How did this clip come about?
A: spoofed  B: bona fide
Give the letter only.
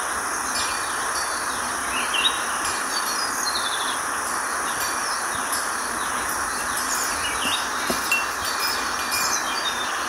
B